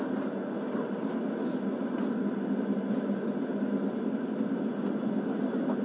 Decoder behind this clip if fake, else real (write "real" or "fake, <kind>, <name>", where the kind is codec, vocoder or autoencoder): real